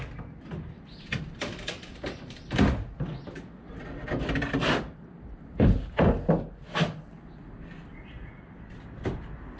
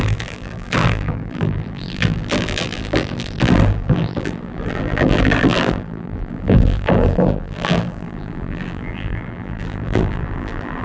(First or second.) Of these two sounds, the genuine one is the first